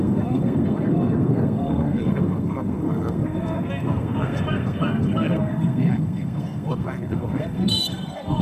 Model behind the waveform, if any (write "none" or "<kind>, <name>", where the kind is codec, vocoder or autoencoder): codec, SNAC